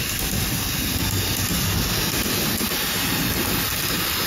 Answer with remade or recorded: recorded